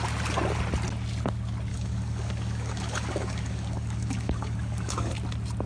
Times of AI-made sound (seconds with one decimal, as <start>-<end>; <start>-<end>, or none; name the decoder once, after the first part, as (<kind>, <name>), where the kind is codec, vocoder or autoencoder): 1.7-5.1 (codec, DAC)

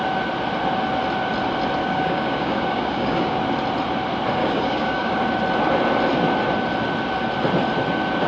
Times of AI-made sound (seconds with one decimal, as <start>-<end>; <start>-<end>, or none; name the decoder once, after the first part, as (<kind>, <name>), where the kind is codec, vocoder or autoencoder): 1.8-3.4 (codec, DAC); 4.4-5.2